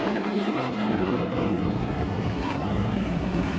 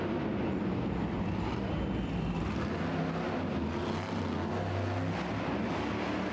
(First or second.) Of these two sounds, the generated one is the first